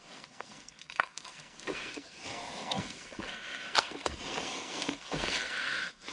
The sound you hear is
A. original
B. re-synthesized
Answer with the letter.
B